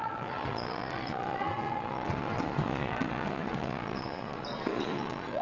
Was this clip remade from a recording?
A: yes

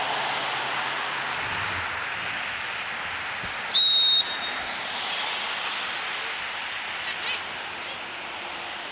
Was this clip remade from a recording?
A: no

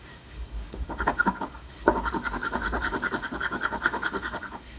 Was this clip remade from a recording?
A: yes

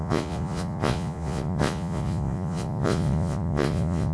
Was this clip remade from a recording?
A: yes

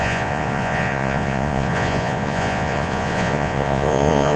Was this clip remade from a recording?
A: yes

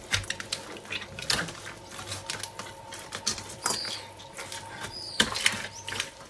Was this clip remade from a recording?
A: no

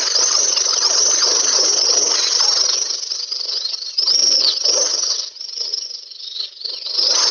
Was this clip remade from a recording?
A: yes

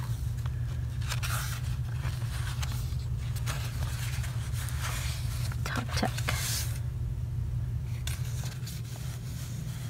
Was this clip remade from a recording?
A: no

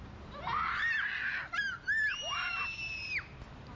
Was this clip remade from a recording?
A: no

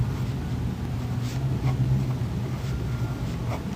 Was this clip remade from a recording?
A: no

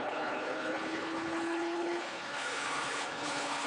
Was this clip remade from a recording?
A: yes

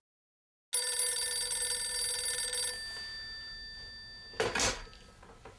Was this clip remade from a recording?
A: no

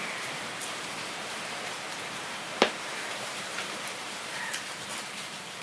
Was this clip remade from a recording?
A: yes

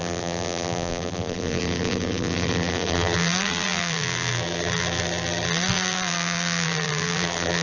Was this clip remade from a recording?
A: yes